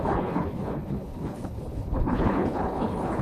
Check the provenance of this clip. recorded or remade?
remade